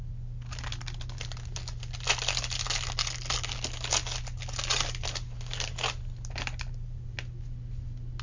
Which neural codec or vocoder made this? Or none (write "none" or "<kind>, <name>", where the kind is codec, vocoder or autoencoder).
none